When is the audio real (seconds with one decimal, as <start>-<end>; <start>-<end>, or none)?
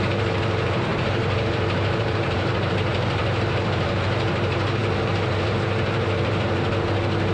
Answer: none